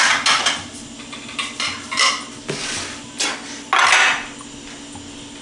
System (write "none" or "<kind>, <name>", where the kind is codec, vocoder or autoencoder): none